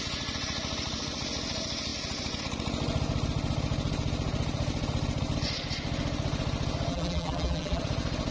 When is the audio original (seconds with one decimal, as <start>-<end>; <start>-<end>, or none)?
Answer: 0.0-6.9; 7.8-8.3